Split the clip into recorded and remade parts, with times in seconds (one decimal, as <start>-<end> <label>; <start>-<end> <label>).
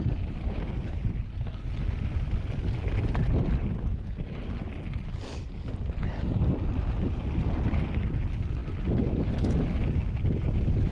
0.0-10.9 recorded